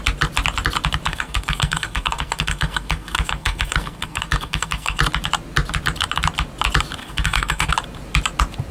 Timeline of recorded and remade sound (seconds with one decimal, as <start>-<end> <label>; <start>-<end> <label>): 0.0-1.1 recorded; 1.1-5.0 remade; 5.0-7.0 recorded; 7.0-7.7 remade; 7.7-8.7 recorded